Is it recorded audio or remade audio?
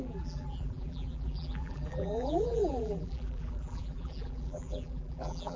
remade